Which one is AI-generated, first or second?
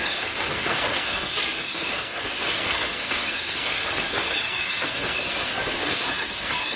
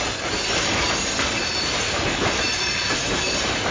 first